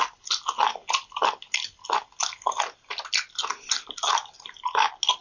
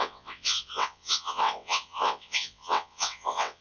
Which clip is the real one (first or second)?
first